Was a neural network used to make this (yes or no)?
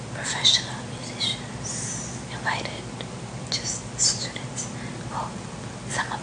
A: no